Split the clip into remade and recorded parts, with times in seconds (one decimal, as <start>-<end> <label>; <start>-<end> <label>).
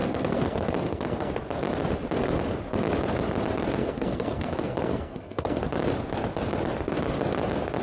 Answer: 0.0-1.3 remade; 1.3-3.8 recorded; 3.8-5.6 remade; 5.6-7.8 recorded